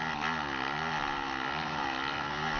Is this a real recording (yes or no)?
yes